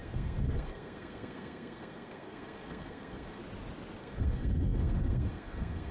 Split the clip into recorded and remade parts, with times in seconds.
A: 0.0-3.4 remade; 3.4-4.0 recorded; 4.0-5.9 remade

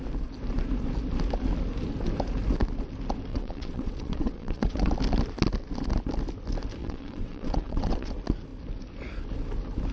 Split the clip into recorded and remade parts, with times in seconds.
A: 0.0-3.3 recorded; 3.3-4.9 remade; 4.9-6.8 recorded; 6.8-8.1 remade; 8.1-9.9 recorded

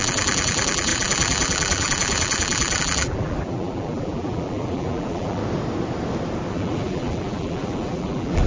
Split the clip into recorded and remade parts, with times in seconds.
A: 0.0-5.4 remade; 5.4-6.5 recorded; 6.5-8.5 remade

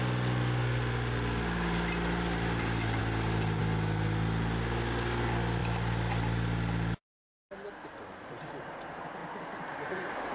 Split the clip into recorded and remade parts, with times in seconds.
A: 0.0-10.3 recorded

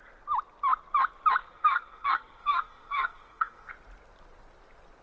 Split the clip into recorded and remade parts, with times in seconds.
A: 0.0-1.4 recorded; 1.4-3.7 remade; 3.7-5.0 recorded

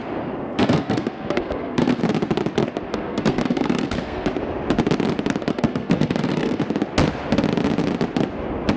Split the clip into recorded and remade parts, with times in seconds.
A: 0.0-0.4 recorded; 0.4-2.0 remade; 2.0-2.9 recorded; 2.9-4.3 remade; 4.3-5.5 recorded; 5.5-6.6 remade; 6.6-8.8 recorded